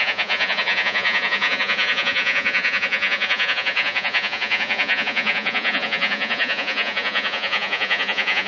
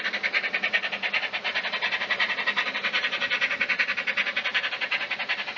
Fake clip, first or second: first